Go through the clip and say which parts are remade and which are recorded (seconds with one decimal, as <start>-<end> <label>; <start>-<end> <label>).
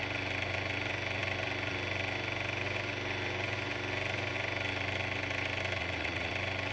0.0-5.8 recorded; 5.8-6.3 remade; 6.3-6.7 recorded